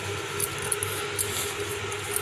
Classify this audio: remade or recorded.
recorded